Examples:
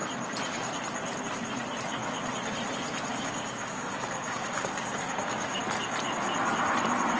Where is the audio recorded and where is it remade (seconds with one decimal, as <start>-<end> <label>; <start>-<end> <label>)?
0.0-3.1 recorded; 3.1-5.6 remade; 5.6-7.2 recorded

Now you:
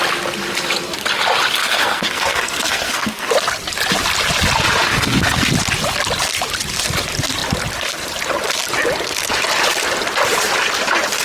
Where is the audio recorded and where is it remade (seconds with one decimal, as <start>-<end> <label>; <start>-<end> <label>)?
0.0-1.6 recorded; 1.6-3.3 remade; 3.3-4.9 recorded; 4.9-5.5 remade; 5.5-11.2 recorded

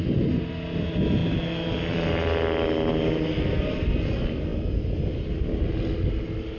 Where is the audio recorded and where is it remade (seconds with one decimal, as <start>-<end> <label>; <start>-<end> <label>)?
0.0-6.6 recorded